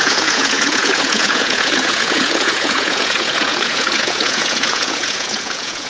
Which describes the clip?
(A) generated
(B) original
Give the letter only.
A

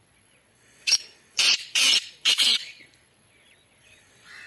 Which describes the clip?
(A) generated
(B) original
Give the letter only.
A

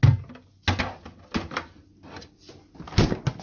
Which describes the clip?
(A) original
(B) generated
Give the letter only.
A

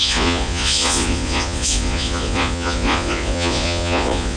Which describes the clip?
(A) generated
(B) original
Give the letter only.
A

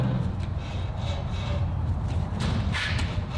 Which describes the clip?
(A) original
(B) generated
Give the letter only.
A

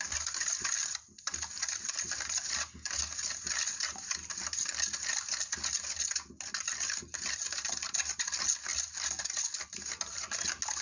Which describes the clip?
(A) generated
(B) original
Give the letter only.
B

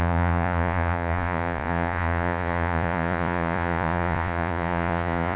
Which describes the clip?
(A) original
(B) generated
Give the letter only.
B